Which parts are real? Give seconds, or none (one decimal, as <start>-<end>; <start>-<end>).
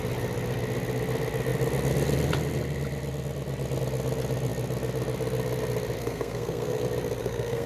0.0-6.0; 6.8-7.2